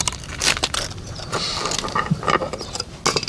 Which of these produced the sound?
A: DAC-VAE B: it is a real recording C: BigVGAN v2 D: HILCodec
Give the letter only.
B